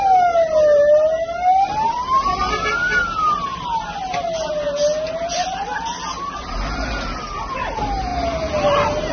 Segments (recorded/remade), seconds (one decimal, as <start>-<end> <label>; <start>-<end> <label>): 0.0-9.1 recorded

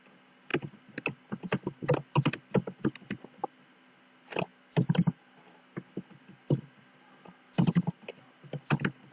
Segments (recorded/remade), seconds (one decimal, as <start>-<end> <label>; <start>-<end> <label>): 0.0-9.1 recorded

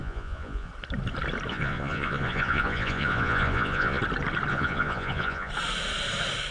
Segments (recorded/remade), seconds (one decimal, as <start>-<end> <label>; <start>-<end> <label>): 0.0-0.7 remade; 0.7-1.5 recorded; 1.5-4.0 remade; 4.0-4.5 recorded; 4.5-5.5 remade; 5.5-6.5 recorded

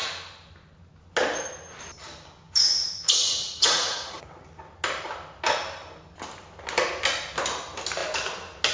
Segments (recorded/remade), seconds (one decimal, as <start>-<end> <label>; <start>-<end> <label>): 0.0-2.8 recorded; 2.8-4.3 remade; 4.3-8.7 recorded

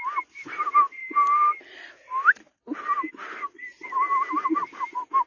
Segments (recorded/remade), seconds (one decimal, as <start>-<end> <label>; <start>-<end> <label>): 0.0-5.3 recorded

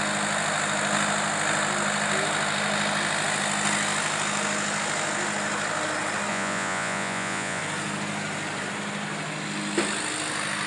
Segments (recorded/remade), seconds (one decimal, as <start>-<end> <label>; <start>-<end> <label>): 0.0-6.3 recorded; 6.3-7.6 remade; 7.6-10.7 recorded

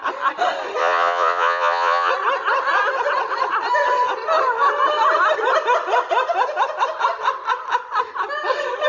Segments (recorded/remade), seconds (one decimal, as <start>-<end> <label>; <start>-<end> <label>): 0.0-0.8 recorded; 0.8-2.1 remade; 2.1-8.9 recorded